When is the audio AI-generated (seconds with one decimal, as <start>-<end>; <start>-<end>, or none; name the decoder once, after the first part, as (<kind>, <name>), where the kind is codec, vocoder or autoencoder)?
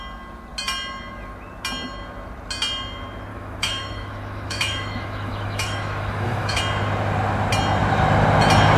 3.3-6.6 (autoencoder, DAC-VAE)